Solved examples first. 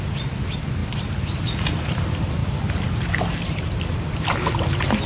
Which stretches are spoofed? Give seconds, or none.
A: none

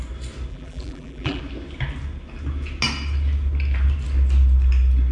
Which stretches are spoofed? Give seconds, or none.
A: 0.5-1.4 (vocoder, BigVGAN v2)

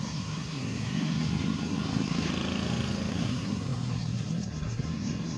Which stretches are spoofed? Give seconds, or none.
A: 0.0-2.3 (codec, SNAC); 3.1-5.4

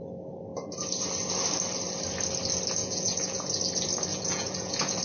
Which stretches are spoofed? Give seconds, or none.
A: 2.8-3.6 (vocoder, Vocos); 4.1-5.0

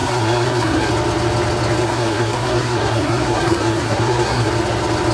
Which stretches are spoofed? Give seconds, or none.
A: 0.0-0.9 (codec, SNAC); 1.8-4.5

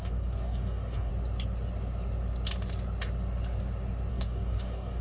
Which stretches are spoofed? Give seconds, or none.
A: 0.0-1.1 (codec, DAC); 4.1-5.0

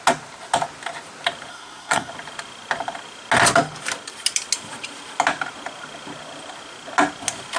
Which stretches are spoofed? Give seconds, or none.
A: 1.5-2.1 (codec, SNAC)